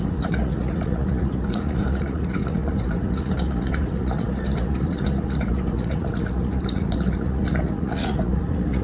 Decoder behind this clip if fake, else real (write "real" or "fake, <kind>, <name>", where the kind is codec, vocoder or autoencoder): fake, vocoder, Vocos